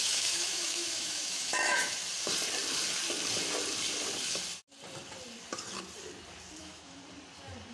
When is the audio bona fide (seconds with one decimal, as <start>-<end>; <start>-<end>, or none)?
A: 2.0-6.6; 7.0-7.7